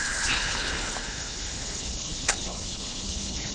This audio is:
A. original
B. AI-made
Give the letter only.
B